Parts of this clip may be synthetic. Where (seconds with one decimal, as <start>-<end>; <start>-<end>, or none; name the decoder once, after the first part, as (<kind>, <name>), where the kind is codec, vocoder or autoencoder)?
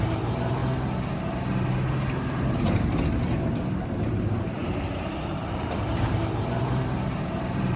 0.0-0.6 (vocoder, BigVGAN v2); 3.9-7.8